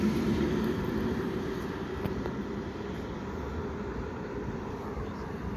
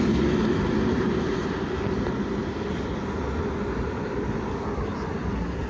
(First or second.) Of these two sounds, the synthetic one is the first